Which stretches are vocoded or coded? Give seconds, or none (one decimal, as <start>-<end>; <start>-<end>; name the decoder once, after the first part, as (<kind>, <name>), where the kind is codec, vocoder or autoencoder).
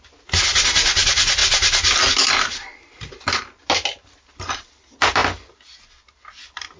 none